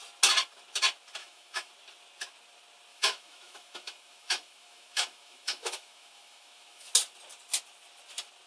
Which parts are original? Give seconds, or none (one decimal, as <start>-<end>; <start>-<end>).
0.0-1.2; 1.7-2.9; 6.9-8.5